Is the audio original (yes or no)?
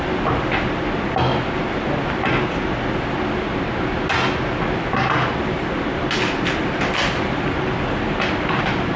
yes